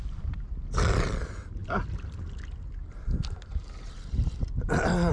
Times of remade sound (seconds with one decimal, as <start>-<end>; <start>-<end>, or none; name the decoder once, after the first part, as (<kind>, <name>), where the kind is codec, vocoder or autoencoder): none